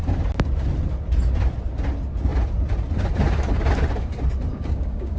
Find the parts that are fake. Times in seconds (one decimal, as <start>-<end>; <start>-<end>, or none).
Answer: 4.5-5.2